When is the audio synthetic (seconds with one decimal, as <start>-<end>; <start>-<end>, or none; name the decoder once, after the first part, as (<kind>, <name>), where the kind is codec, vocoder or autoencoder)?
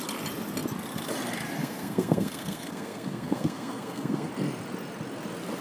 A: 1.6-4.3 (codec, SNAC)